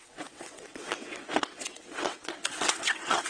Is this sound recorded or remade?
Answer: remade